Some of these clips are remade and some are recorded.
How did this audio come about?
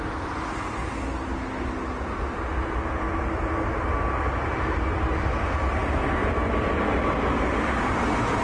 recorded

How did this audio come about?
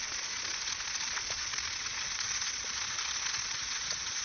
remade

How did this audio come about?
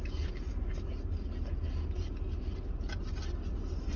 recorded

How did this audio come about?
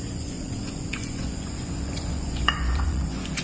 remade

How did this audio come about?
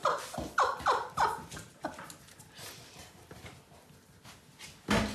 recorded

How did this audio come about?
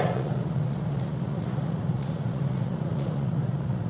remade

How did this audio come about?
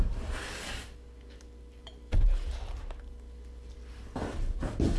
recorded